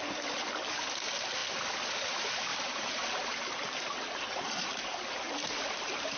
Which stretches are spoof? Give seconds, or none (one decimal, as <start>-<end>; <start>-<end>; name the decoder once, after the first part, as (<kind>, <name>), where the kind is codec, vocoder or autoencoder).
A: 2.5-6.2 (vocoder, BigVGAN v2)